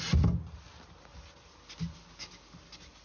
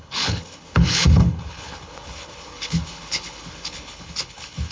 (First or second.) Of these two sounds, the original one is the first